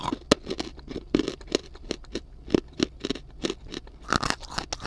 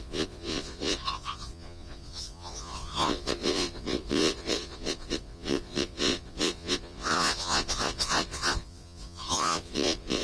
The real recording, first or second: first